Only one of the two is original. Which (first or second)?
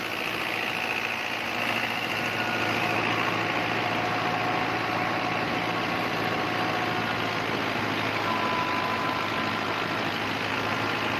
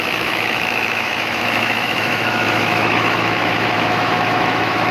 first